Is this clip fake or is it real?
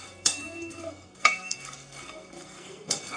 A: fake